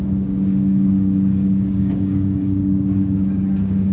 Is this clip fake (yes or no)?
yes